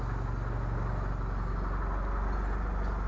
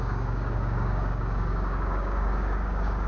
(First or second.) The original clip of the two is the first